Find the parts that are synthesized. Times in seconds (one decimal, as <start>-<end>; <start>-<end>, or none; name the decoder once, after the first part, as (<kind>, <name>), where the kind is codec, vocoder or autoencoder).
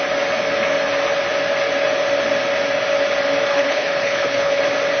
3.5-4.6 (codec, HILCodec)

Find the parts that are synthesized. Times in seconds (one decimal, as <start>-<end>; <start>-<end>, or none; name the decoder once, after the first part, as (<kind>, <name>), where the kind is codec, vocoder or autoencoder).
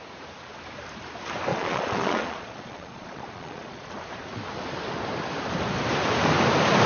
1.5-3.9 (vocoder, Vocos)